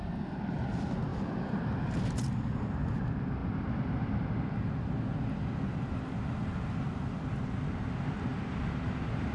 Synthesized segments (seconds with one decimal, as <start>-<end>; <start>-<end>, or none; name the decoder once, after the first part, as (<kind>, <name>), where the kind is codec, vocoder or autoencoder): none